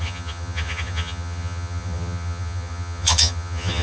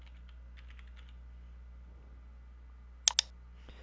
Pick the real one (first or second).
second